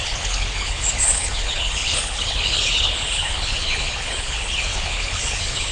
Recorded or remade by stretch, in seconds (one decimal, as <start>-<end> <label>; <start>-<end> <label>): 0.0-5.7 remade